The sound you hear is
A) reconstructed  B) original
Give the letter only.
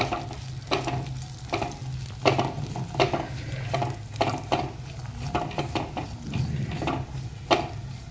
B